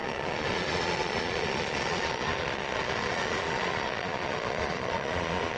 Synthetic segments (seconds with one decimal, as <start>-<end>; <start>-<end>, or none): 0.0-5.6